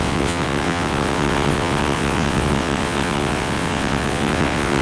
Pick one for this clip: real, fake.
fake